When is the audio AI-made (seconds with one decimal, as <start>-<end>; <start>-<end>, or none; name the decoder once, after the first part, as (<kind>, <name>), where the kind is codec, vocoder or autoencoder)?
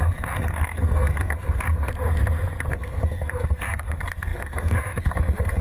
0.0-1.9 (codec, SNAC); 2.7-5.6